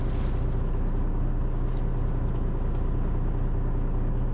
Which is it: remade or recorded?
recorded